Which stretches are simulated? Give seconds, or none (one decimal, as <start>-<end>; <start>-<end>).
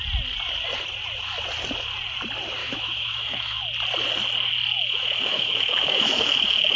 2.6-3.6; 4.7-6.8